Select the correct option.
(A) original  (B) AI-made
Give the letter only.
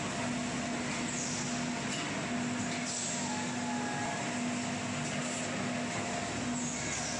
A